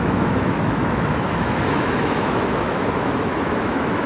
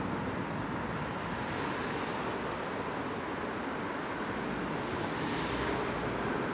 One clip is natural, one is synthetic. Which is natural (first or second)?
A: second